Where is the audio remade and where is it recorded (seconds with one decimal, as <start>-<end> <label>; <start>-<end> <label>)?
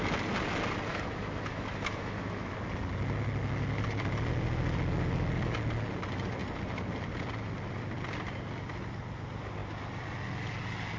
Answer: 0.0-0.9 recorded; 0.9-2.5 remade; 2.5-11.0 recorded